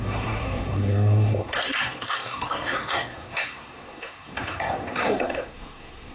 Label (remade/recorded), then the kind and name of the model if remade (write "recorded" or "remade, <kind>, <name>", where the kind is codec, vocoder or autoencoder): remade, codec, SNAC